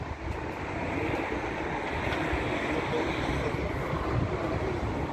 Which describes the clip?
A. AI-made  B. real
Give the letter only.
B